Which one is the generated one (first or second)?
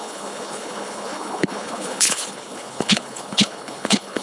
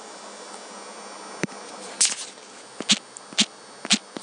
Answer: first